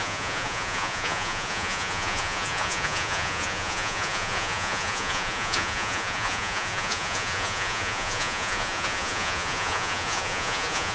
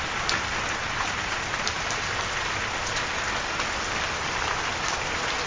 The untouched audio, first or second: second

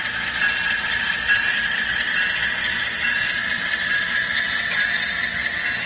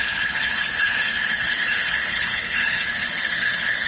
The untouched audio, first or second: first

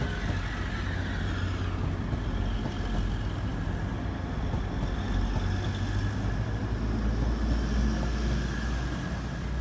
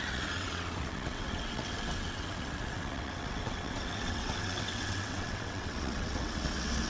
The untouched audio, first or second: first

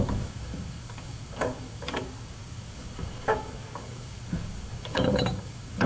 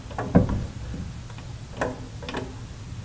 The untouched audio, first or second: second